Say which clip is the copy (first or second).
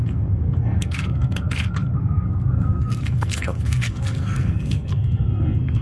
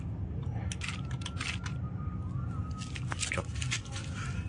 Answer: first